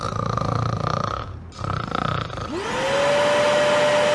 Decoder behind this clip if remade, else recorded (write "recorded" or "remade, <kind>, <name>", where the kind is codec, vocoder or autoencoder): recorded